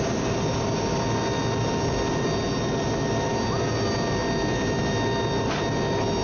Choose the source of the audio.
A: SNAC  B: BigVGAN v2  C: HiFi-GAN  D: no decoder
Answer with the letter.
D